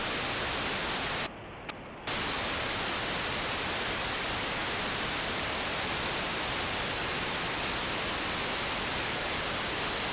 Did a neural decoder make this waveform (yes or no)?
no